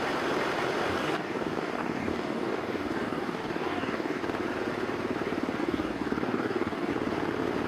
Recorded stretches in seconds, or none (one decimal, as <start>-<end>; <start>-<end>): 0.0-0.9; 4.2-5.6; 6.9-7.7